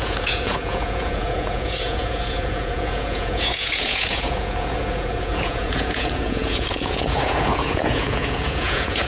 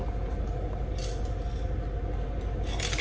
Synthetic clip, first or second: first